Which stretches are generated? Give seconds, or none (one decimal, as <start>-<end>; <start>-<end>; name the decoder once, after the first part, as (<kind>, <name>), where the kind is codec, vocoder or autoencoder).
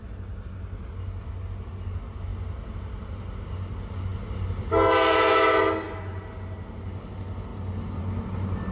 none